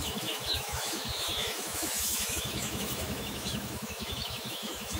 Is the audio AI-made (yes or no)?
yes